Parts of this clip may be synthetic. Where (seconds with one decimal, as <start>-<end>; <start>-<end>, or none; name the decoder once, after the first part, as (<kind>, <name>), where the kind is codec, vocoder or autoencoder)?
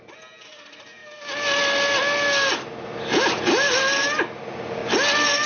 none